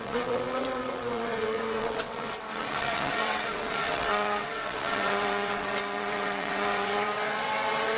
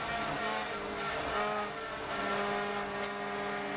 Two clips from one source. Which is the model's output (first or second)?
first